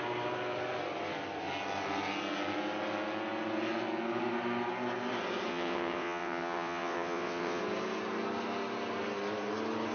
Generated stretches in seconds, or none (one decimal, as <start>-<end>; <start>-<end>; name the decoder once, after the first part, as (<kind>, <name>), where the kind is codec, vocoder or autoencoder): 5.5-7.6 (vocoder, WaveNeXt)